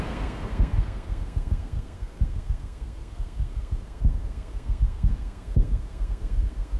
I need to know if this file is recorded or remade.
remade